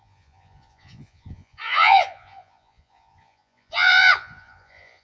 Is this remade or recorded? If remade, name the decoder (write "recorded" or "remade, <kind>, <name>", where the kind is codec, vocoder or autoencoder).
remade, vocoder, Vocos